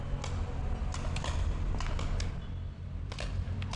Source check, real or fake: real